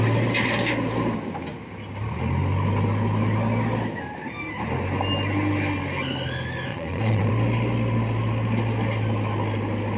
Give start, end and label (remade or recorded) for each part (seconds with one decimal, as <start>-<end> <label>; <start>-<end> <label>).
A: 0.0-6.7 recorded; 6.7-7.3 remade; 7.3-10.0 recorded